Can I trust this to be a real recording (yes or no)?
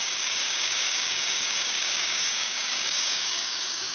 no